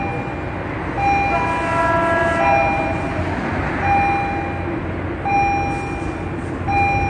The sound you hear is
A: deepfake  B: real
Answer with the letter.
B